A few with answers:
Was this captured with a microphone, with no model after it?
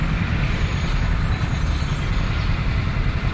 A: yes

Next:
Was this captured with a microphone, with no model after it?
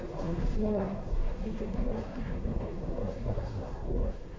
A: no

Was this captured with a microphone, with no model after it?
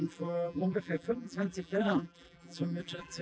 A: no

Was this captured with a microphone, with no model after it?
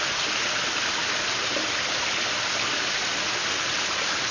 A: yes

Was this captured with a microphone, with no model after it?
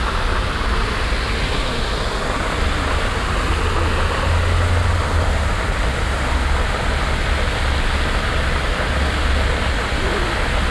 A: yes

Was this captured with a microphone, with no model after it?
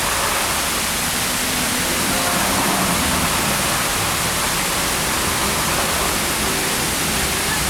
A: no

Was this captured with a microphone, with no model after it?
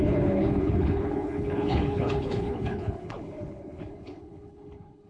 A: no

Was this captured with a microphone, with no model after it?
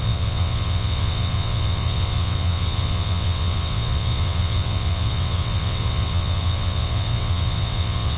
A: no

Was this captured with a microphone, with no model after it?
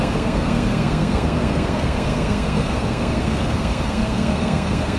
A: no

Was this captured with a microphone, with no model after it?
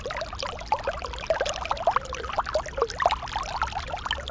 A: yes